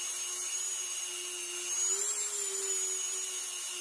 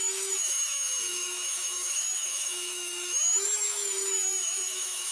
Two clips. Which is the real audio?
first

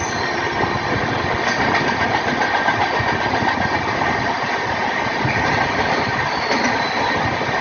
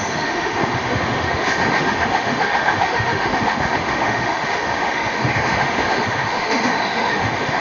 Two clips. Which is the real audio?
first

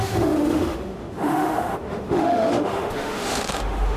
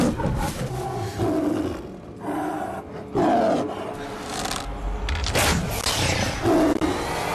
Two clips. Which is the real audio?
second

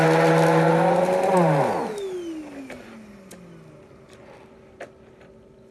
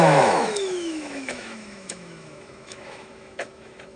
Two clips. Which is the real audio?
first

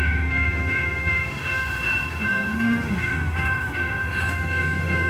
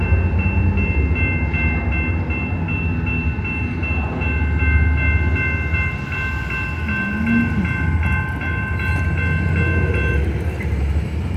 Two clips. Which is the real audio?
second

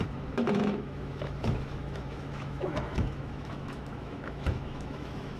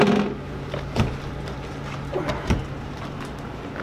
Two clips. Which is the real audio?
second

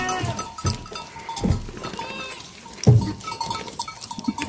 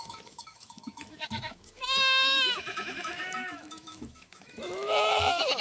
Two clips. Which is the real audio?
first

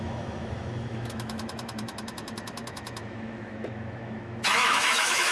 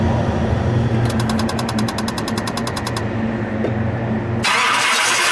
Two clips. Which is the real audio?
second